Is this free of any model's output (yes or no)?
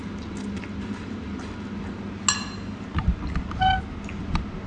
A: yes